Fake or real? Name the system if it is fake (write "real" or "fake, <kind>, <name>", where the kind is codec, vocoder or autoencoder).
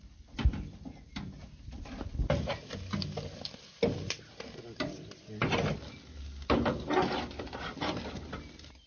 real